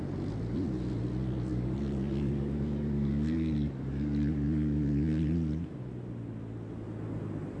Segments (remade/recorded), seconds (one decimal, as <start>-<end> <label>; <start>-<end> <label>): 0.0-1.5 recorded; 1.5-5.2 remade; 5.2-7.6 recorded